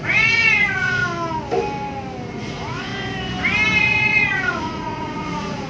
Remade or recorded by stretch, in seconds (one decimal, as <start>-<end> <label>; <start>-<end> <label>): 0.0-1.0 remade; 1.0-2.3 recorded; 2.3-2.9 remade; 2.9-3.8 recorded; 3.8-5.7 remade